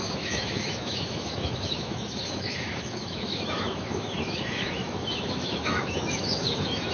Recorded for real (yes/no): no